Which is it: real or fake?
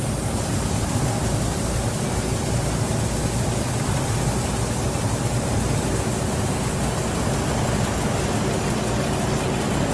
real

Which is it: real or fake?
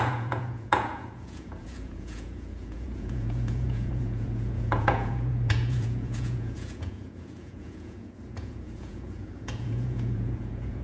fake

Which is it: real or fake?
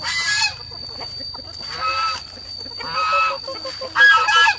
real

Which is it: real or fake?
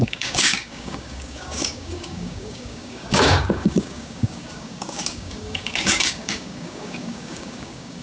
fake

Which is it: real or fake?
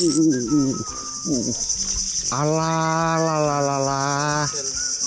real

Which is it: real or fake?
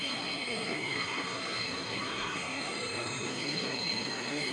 fake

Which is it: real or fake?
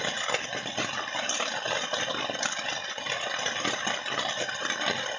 fake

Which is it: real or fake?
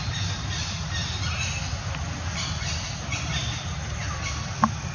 real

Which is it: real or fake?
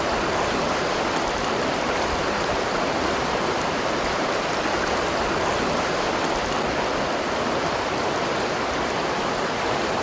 real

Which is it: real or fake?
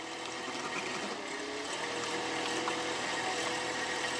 real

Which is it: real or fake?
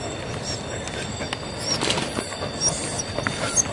real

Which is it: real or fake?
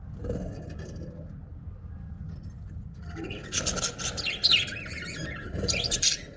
real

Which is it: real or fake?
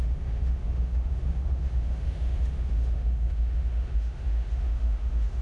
fake